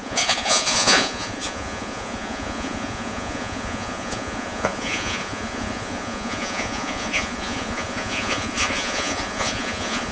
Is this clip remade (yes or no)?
yes